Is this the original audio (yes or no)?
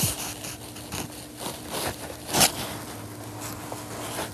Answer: yes